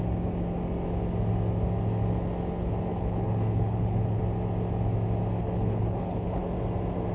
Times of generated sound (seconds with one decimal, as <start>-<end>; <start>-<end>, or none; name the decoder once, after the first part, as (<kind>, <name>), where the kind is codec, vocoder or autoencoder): 2.9-4.2 (codec, HILCodec); 5.4-6.4

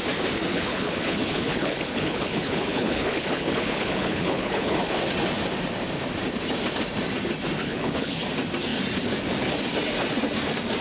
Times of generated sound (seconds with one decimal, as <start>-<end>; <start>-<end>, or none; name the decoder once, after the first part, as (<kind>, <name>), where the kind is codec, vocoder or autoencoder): 0.5-5.0 (codec, HILCodec); 7.6-8.2

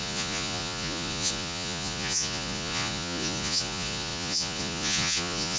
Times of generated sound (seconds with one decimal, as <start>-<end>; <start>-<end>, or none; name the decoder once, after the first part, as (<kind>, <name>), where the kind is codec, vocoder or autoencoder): 0.0-5.6 (vocoder, Vocos)